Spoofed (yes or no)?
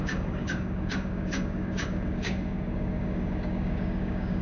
yes